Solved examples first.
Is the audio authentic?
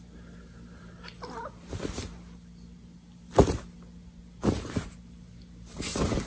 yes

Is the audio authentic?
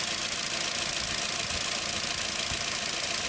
yes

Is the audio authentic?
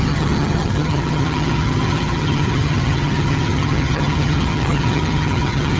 no